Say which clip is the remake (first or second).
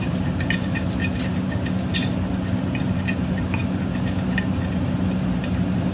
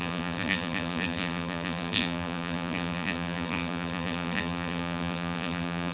second